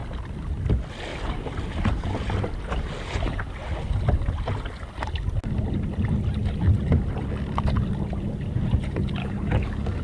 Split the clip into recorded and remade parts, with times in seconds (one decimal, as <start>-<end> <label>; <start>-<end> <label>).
0.0-9.2 recorded; 9.2-10.0 remade